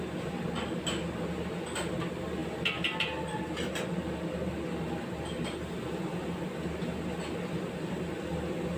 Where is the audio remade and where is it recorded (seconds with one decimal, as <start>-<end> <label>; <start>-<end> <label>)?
0.0-8.8 recorded